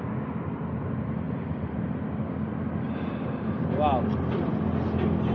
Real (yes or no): yes